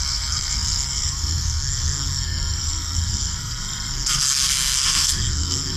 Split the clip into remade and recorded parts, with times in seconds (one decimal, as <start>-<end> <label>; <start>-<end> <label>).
0.0-5.8 remade